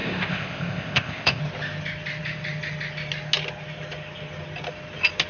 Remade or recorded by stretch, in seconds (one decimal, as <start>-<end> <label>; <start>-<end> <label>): 0.0-1.4 remade; 1.4-5.3 recorded